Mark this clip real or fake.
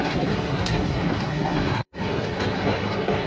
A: fake